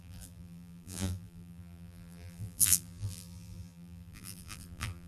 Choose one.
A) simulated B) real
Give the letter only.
A